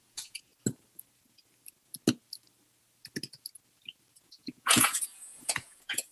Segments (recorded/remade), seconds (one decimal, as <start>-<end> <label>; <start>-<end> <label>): 0.0-0.5 remade; 0.5-4.2 recorded; 4.2-6.1 remade